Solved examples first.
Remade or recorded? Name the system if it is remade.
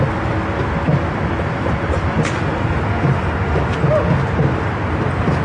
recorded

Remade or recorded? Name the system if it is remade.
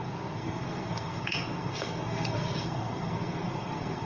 remade, codec, SNAC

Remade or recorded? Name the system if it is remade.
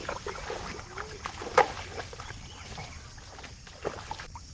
recorded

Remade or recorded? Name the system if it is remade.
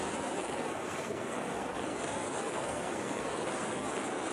remade, codec, SNAC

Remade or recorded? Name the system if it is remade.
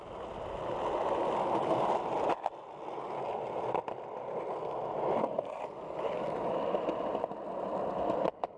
recorded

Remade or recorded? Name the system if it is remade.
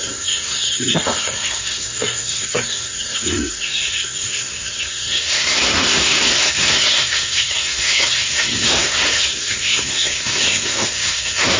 remade, codec, SNAC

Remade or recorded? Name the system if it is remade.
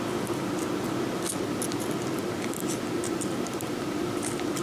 recorded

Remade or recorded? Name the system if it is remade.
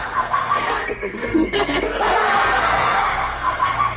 remade, codec, SNAC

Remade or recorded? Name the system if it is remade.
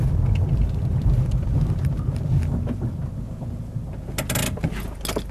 recorded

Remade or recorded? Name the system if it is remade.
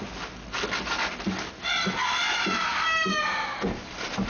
recorded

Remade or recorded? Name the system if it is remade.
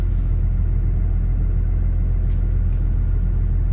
recorded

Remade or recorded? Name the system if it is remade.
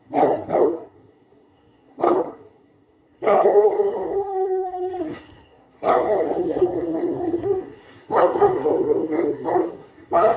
remade, codec, SNAC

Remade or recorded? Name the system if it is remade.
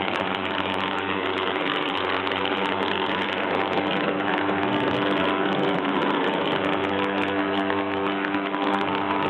remade, codec, SNAC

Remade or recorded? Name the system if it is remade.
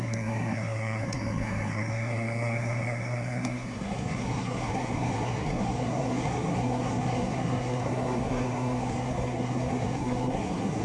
remade, codec, SNAC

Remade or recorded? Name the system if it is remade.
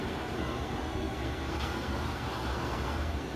remade, codec, SNAC